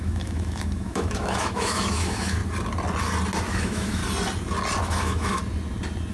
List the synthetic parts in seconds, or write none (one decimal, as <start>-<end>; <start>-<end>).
0.0-2.4; 3.5-4.0; 4.8-5.4